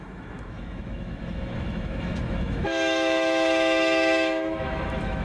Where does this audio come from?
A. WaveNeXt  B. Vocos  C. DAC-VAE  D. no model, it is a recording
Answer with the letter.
C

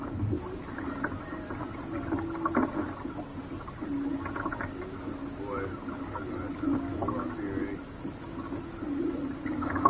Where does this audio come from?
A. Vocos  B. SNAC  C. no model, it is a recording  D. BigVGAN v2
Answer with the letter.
C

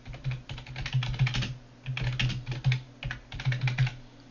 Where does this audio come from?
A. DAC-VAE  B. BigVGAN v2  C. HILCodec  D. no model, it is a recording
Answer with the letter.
D